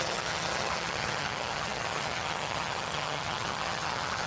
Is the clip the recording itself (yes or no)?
no